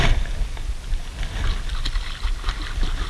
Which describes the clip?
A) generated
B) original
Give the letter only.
B